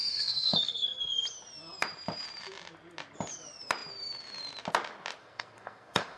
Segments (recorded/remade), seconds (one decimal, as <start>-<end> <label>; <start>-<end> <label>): 0.0-1.2 remade; 1.2-5.2 recorded; 5.2-6.2 remade